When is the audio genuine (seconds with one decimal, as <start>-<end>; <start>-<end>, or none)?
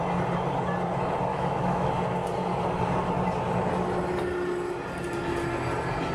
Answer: 0.0-1.3; 1.9-6.1